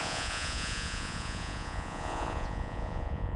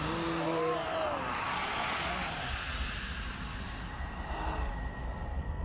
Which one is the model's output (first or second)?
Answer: first